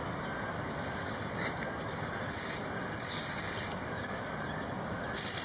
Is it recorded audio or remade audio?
recorded